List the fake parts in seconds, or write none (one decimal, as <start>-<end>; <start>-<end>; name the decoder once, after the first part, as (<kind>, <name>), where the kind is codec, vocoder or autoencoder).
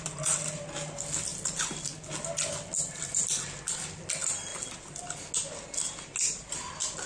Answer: none